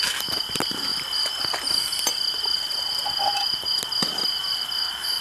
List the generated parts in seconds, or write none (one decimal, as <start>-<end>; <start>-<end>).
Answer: none